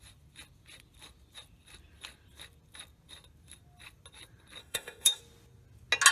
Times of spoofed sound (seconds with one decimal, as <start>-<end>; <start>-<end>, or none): 4.6-5.2